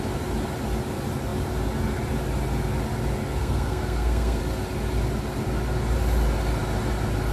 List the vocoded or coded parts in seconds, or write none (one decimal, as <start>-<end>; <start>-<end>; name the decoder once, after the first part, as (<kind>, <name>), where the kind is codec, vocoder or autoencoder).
3.4-4.4 (codec, SNAC)

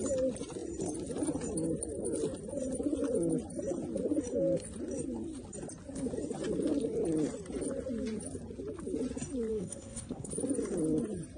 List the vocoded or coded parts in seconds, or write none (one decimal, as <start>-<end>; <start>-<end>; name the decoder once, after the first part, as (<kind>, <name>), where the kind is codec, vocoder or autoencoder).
9.5-10.3 (codec, SNAC)

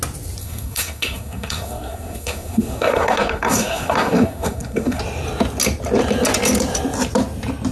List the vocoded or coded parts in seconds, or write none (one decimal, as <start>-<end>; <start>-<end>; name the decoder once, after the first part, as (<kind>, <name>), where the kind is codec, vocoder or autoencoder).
0.4-5.0 (codec, SNAC)

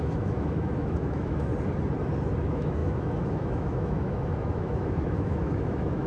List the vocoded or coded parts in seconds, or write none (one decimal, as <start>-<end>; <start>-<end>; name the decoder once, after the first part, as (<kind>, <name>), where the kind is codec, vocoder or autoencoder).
0.0-1.5 (autoencoder, DAC-VAE); 2.4-6.1